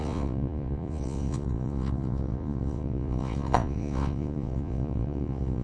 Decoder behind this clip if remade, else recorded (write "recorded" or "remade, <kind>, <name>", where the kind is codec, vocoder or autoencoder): remade, vocoder, Vocos